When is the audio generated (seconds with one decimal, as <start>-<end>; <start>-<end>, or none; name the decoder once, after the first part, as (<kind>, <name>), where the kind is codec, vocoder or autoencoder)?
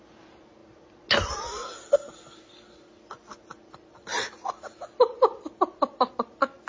none